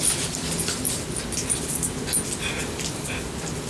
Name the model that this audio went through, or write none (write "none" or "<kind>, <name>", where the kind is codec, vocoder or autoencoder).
none